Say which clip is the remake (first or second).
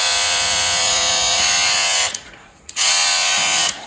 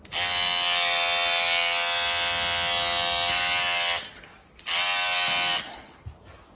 first